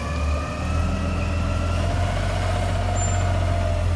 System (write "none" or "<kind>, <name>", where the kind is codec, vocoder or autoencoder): none